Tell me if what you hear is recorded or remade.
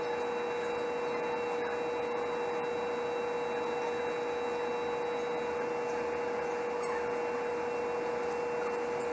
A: recorded